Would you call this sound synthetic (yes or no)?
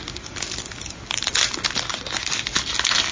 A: no